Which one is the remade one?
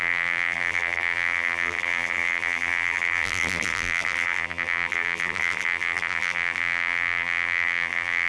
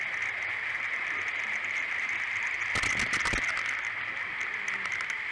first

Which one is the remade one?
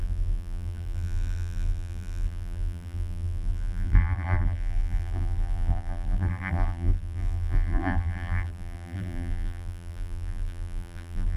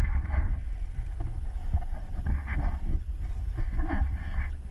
first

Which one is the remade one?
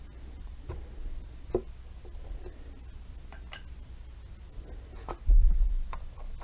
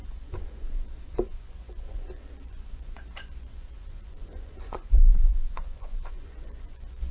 second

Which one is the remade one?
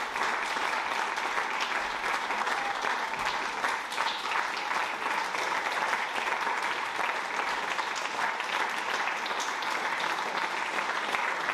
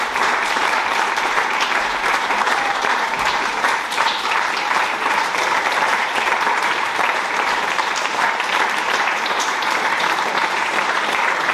second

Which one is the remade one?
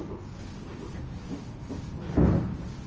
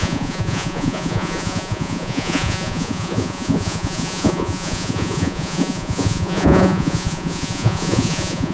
second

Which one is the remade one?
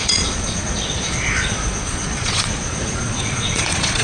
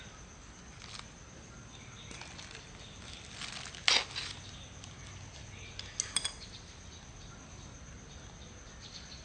first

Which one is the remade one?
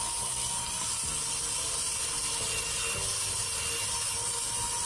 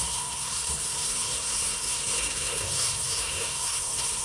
second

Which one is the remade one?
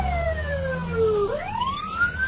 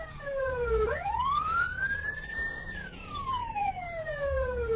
second